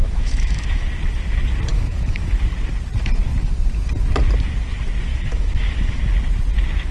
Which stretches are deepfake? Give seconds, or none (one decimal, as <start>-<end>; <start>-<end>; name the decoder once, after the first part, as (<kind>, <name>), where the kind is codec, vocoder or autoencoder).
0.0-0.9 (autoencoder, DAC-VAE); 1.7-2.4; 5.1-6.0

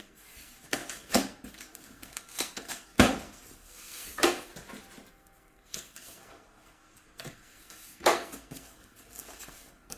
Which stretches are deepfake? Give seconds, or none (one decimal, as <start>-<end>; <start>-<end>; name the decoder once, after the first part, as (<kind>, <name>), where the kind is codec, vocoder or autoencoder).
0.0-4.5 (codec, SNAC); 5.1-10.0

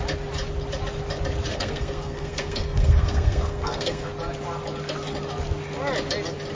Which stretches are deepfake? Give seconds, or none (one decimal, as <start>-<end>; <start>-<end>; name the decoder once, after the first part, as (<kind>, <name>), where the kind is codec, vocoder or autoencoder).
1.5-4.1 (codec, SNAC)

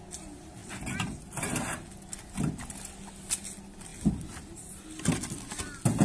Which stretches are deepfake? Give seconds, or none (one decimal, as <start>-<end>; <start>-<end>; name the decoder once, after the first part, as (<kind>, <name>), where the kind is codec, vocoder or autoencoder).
none

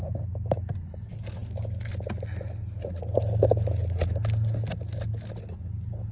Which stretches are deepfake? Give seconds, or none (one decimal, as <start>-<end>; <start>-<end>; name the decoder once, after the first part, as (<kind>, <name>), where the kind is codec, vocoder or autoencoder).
none

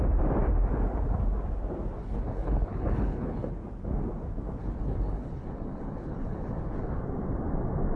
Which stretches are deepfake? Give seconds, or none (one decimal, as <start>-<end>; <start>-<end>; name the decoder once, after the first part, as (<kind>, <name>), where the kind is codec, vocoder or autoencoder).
2.0-3.5 (codec, HILCodec); 4.6-7.0

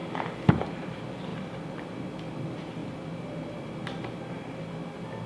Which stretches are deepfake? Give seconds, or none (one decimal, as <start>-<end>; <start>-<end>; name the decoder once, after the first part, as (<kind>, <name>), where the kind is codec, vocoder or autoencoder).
0.0-1.3 (vocoder, BigVGAN v2); 2.0-5.3